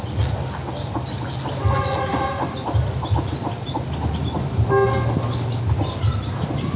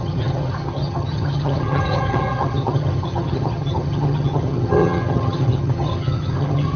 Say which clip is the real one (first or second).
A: first